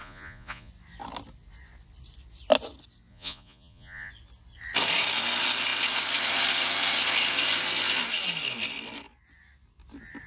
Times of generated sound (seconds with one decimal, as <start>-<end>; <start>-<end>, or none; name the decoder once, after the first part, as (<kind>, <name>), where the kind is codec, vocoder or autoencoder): 0.0-0.7 (vocoder, Vocos); 3.1-4.1